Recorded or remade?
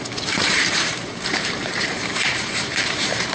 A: remade